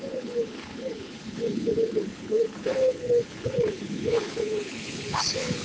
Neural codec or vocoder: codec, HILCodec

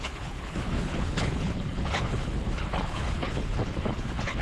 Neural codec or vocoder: codec, HILCodec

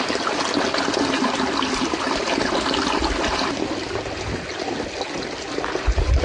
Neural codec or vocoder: none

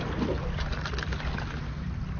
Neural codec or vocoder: none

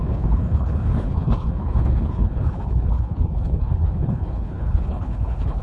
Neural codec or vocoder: codec, HILCodec